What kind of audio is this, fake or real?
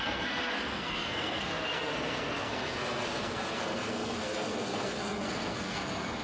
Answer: fake